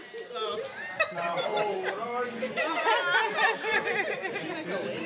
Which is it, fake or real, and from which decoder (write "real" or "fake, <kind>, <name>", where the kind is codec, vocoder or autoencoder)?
real